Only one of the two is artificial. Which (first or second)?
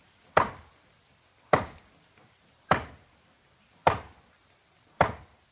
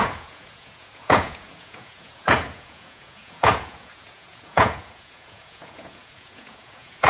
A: second